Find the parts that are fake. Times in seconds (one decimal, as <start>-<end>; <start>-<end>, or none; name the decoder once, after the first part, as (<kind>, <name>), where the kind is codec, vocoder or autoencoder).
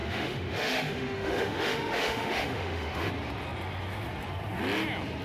0.0-3.1 (autoencoder, DAC-VAE)